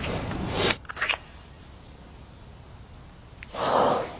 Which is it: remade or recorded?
recorded